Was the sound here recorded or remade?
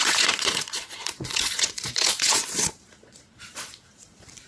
remade